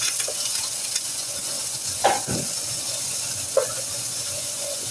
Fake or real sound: fake